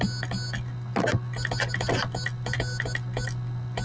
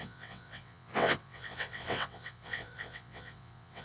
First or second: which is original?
first